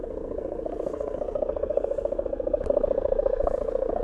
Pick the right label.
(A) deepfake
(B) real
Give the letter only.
A